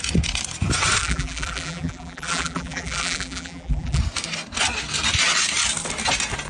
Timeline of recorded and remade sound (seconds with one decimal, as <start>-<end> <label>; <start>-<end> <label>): 0.0-1.0 recorded; 1.0-4.0 remade; 4.0-6.5 recorded